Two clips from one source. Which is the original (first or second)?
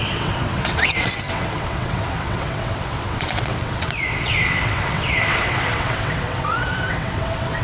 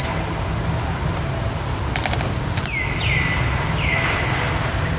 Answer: second